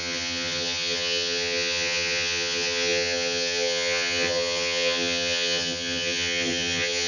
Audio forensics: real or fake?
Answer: fake